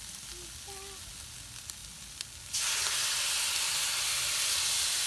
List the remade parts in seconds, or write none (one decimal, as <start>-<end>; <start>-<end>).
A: none